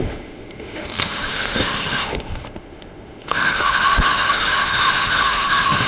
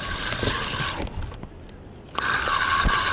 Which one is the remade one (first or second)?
first